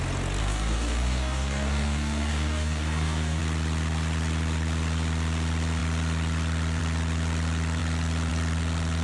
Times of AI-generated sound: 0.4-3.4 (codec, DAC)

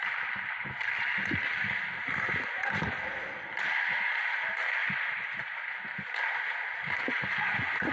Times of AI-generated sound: none

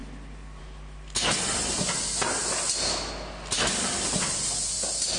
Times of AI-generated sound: none

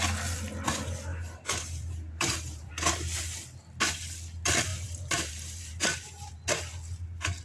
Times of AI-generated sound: 1.1-2.7 (vocoder, BigVGAN v2); 4.7-6.3

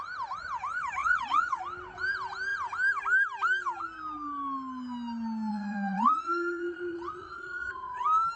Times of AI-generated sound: 1.0-1.6 (vocoder, Vocos); 5.5-8.0

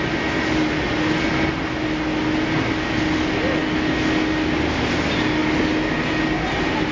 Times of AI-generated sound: none

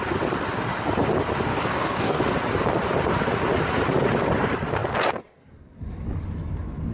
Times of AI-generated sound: 1.5-2.2 (codec, DAC)

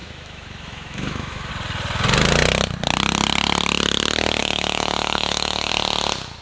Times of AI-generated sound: 0.0-1.5 (autoencoder, DAC-VAE); 4.4-5.7